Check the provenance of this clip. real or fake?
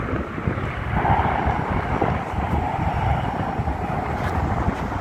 real